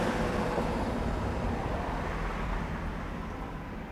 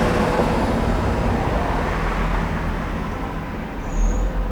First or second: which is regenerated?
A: first